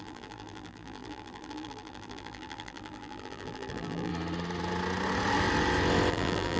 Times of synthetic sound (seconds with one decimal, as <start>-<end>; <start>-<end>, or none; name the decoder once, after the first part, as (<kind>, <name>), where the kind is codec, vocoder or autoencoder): 0.0-4.1 (vocoder, BigVGAN v2); 6.1-6.6